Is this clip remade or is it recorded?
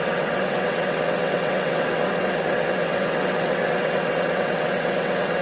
remade